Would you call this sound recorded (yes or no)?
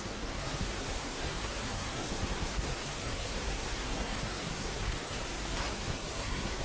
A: no